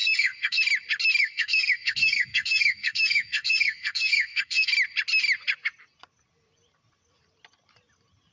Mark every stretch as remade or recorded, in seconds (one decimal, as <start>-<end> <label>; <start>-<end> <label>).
0.0-0.6 remade; 0.6-1.2 recorded; 1.2-4.7 remade; 4.7-8.3 recorded